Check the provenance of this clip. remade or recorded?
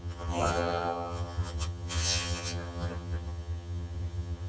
remade